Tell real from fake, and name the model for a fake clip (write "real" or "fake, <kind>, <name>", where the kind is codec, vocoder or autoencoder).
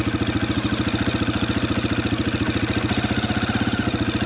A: real